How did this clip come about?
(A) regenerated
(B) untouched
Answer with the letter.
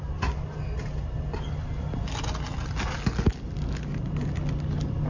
B